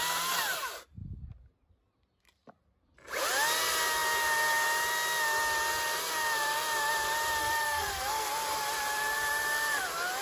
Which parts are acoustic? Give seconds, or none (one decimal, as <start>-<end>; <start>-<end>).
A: 0.0-7.4; 8.3-10.2